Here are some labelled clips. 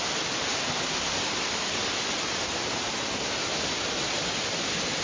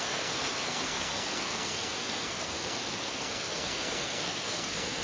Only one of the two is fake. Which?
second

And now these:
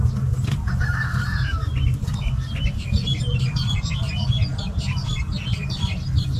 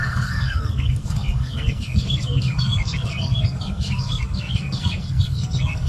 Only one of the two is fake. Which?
second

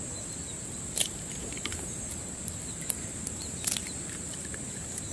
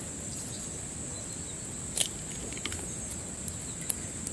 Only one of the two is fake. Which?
first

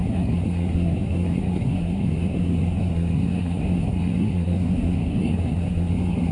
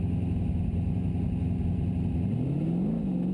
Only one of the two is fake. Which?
first